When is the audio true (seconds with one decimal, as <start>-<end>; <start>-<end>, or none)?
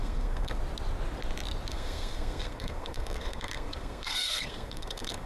0.6-1.7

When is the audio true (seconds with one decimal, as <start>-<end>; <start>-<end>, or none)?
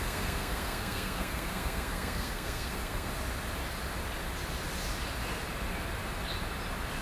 3.1-7.0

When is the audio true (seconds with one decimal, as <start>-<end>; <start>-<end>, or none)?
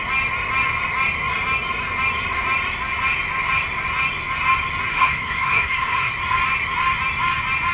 0.0-4.9; 6.1-7.7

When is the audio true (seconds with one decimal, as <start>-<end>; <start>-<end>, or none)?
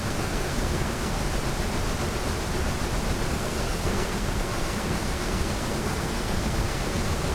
1.2-3.3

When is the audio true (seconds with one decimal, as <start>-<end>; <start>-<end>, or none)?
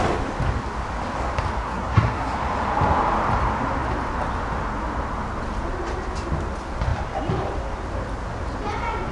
0.0-1.6; 2.4-9.1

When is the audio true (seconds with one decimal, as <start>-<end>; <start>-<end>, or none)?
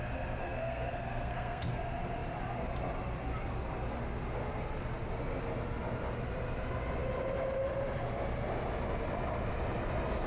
0.0-0.4; 1.8-10.3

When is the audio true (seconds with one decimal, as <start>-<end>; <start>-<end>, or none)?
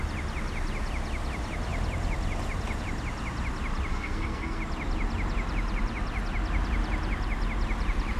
0.0-3.9; 4.6-8.2